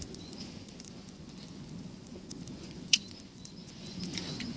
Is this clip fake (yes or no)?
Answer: yes